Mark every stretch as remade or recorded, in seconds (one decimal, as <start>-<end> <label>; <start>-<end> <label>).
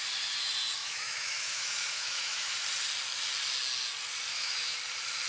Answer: 0.0-0.8 recorded; 0.8-2.5 remade; 2.5-4.3 recorded; 4.3-4.8 remade; 4.8-5.3 recorded